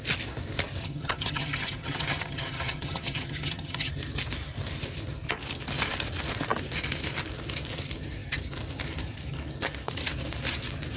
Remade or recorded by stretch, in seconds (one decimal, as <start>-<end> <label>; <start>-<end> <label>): 0.0-0.8 recorded; 0.8-3.9 remade; 3.9-11.0 recorded